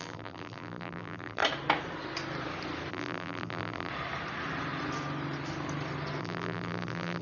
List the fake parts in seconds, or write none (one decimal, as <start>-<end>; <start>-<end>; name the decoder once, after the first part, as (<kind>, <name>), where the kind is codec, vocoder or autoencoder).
0.0-1.4 (vocoder, BigVGAN v2); 2.9-3.9; 6.2-7.2